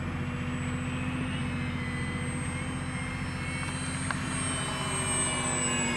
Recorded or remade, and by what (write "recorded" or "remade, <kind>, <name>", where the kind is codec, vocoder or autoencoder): recorded